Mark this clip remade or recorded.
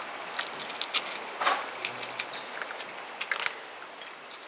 recorded